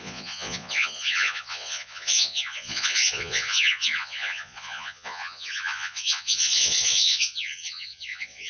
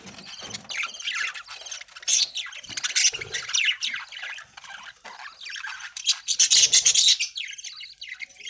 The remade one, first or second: first